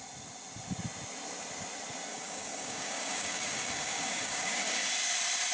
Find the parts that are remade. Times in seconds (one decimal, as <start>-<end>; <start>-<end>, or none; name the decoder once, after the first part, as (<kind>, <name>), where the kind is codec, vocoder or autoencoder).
2.1-4.9 (codec, DAC)